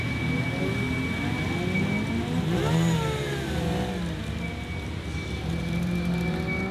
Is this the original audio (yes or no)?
yes